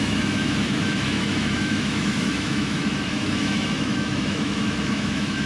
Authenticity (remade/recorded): remade